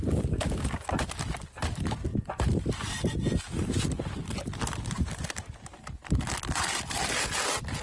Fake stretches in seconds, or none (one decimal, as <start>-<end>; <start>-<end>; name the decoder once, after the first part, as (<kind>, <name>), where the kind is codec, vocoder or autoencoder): none